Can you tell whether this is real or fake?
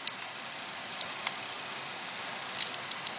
real